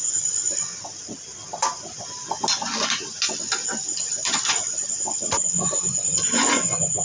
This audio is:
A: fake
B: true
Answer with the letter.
B